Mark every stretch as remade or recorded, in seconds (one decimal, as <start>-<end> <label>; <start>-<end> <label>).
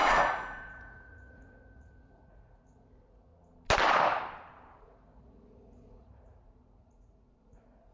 0.0-3.3 remade; 3.3-4.8 recorded; 4.8-7.9 remade